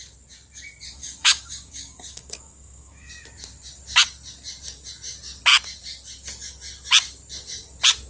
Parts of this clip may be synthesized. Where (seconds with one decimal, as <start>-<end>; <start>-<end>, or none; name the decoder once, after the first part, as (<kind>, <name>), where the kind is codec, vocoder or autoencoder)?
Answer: 1.0-3.1 (codec, DAC)